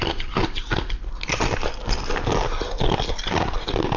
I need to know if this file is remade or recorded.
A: recorded